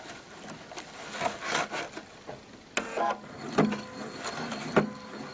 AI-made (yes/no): no